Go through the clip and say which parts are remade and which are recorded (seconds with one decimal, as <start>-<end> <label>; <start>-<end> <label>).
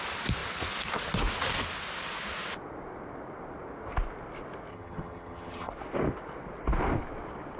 0.0-4.7 recorded; 4.7-5.7 remade; 5.7-7.6 recorded